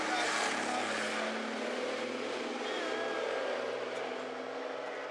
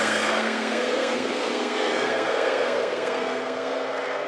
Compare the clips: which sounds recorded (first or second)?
first